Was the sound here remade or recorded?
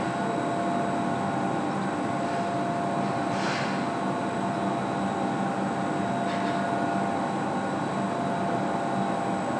recorded